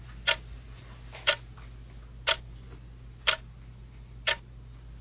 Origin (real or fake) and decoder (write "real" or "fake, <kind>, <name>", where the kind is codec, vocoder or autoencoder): real